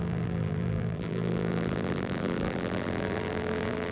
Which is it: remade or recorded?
remade